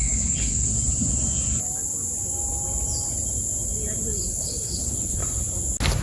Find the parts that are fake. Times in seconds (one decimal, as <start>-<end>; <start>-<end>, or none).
0.0-0.7; 4.3-5.2